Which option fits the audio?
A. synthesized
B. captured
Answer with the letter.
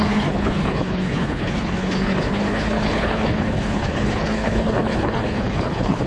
A